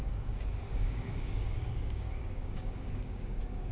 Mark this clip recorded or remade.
remade